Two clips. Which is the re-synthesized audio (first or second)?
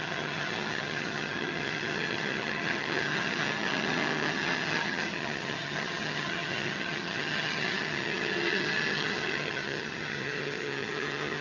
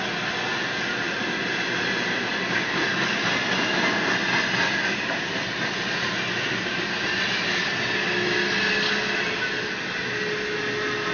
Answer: first